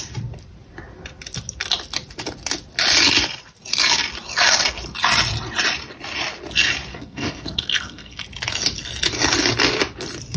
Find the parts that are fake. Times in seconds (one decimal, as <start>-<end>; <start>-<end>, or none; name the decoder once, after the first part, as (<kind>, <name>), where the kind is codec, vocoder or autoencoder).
6.9-8.2 (codec, SNAC)